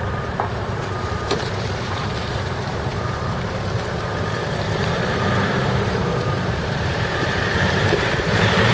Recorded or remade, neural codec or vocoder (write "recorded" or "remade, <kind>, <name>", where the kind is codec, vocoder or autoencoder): remade, vocoder, BigVGAN v2